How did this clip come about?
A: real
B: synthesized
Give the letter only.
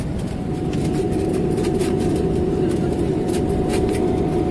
A